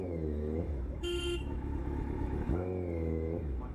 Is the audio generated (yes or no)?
yes